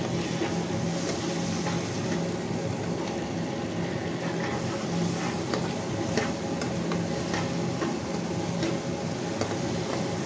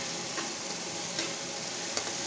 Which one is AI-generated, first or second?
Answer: second